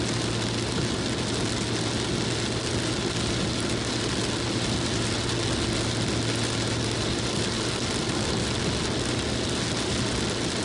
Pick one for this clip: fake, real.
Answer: real